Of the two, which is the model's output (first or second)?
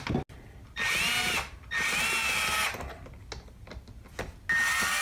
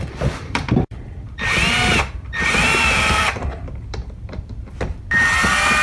second